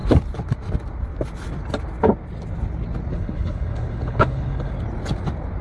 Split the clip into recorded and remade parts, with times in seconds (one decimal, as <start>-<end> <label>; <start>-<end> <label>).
0.0-3.1 recorded; 3.1-4.7 remade; 4.7-5.6 recorded